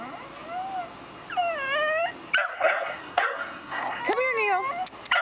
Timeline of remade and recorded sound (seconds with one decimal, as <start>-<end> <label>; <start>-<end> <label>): 0.0-2.5 recorded; 2.5-4.0 remade; 4.0-5.2 recorded